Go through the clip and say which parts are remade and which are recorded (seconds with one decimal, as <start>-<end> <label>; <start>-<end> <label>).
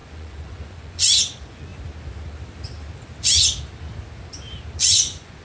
0.0-1.7 remade; 1.7-4.9 recorded; 4.9-5.4 remade